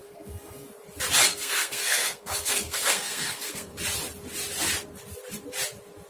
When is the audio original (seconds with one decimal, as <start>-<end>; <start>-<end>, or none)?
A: 0.7-1.3; 3.7-6.1